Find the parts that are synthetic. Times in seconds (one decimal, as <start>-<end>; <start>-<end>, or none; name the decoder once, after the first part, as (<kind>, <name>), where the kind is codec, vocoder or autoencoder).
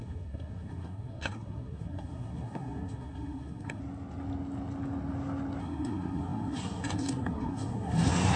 0.0-3.8 (codec, SNAC); 5.6-8.4